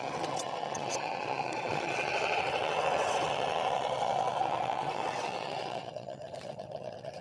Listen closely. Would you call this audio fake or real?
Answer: fake